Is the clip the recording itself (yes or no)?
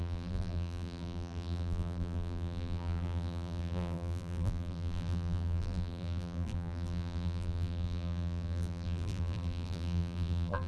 no